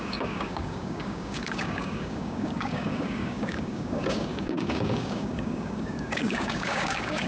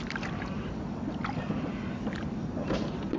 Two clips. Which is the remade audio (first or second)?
first